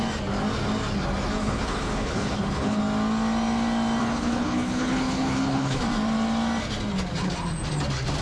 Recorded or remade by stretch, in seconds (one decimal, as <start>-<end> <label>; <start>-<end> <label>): 0.0-1.4 recorded; 1.4-2.8 remade; 2.8-4.0 recorded; 4.0-5.8 remade; 5.8-8.2 recorded